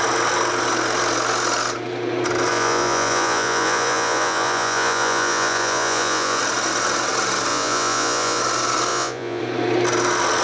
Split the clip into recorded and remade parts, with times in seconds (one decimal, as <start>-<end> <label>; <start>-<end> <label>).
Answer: 0.0-2.5 recorded; 2.5-6.4 remade; 6.4-7.5 recorded; 7.5-8.4 remade; 8.4-8.9 recorded; 8.9-9.4 remade; 9.4-10.4 recorded